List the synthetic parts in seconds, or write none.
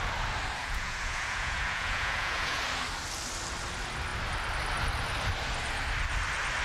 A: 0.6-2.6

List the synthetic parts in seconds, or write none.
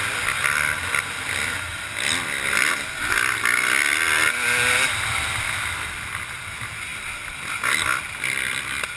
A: none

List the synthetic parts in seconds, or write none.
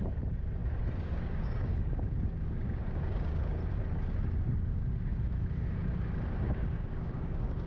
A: 0.0-3.6; 4.2-7.7